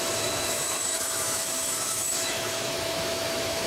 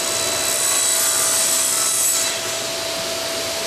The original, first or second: second